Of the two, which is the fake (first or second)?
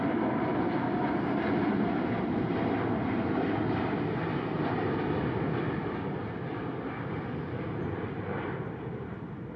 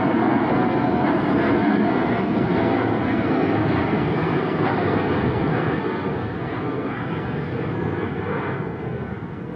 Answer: second